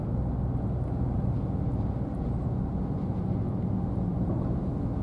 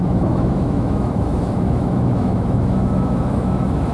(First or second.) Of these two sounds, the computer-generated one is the second